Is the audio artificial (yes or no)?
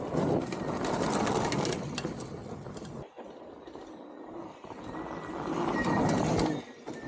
no